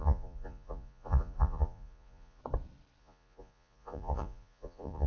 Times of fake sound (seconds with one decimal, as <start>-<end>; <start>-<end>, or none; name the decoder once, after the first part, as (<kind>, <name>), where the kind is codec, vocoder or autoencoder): 0.0-2.4 (vocoder, Vocos); 3.0-5.1